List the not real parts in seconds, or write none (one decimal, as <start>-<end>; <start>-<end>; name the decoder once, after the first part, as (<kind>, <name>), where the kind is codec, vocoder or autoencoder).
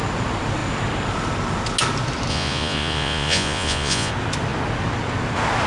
2.3-4.1 (vocoder, Vocos)